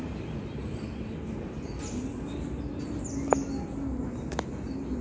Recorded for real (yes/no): yes